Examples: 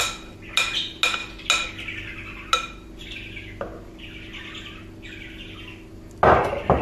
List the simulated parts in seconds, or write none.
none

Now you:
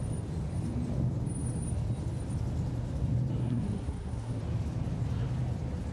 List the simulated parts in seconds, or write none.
3.4-4.4 (codec, SNAC)

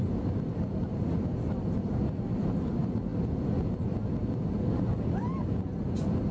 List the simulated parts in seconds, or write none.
none

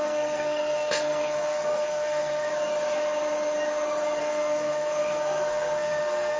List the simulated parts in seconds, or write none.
0.0-2.5 (codec, SNAC); 4.2-6.4

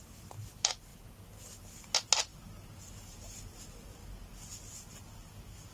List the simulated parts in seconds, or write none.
none

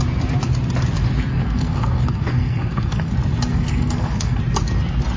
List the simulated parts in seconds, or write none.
1.3-3.1 (codec, SNAC); 3.5-4.4